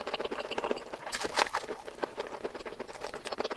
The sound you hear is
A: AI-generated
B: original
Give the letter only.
B